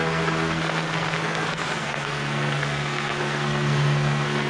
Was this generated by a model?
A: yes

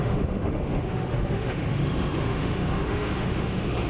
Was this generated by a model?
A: yes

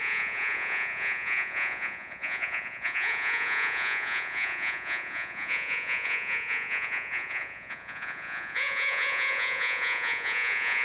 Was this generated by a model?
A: yes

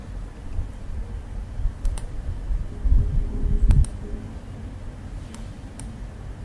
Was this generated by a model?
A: no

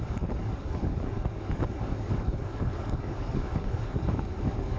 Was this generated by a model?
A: yes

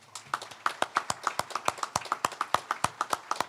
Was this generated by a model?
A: no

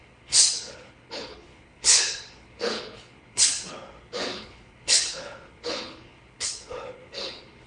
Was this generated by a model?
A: yes